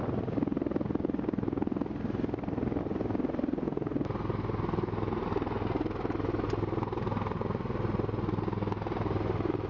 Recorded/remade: recorded